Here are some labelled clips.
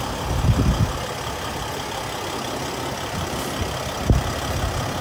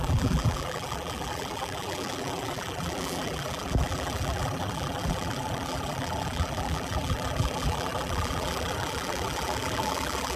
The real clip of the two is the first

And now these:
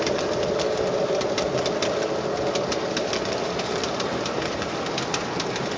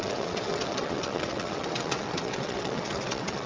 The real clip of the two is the first